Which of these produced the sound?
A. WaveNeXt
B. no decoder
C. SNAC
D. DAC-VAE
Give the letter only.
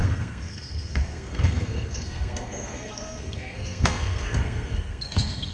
C